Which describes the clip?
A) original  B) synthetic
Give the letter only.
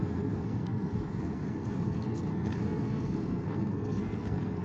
B